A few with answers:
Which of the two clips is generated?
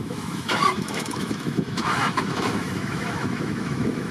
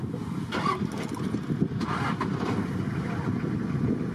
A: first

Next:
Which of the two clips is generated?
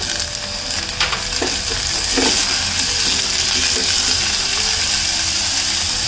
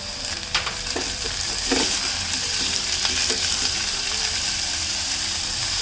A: second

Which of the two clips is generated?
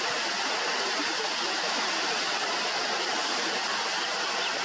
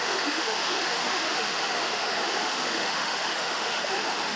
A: second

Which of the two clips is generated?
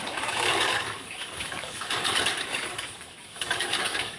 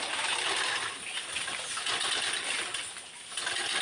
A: first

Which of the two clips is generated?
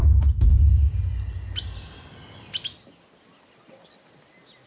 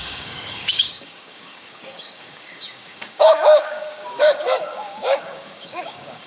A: second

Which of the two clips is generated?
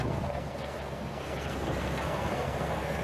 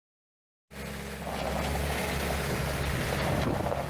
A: first